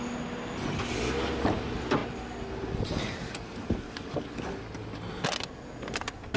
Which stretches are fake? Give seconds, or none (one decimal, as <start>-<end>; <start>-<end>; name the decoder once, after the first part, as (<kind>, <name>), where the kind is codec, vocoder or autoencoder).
none